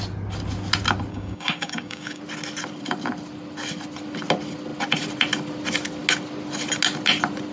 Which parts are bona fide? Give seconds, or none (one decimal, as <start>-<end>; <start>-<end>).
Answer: 0.0-1.1; 2.2-7.5